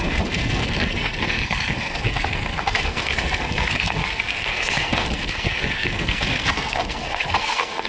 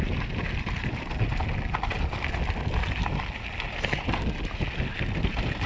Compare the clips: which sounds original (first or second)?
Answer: second